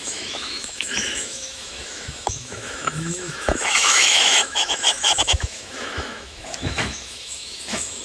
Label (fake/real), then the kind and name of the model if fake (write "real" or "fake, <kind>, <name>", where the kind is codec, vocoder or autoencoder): fake, autoencoder, DAC-VAE